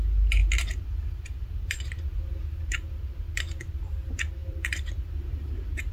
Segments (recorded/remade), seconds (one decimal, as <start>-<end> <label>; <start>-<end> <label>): 0.0-0.4 recorded; 0.4-3.9 remade; 3.9-4.4 recorded; 4.4-5.9 remade